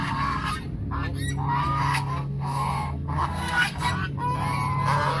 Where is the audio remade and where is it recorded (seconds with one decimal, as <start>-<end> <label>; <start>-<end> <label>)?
0.0-0.5 remade; 0.5-1.6 recorded; 1.6-3.9 remade; 3.9-5.2 recorded